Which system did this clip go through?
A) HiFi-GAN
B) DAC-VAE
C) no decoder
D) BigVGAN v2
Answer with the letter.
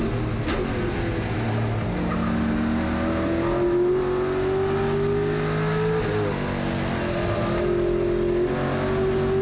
C